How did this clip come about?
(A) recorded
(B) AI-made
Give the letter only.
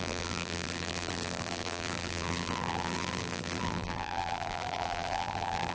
B